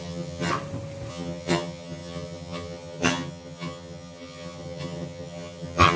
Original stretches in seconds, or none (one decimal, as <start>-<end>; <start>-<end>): 0.5-1.1